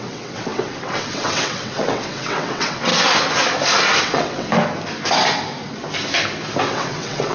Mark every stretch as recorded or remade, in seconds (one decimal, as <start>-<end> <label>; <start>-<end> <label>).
0.0-2.9 remade; 2.9-4.0 recorded; 4.0-4.5 remade; 4.5-6.7 recorded; 6.7-7.3 remade